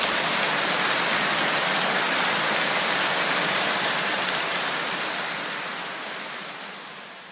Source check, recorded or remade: recorded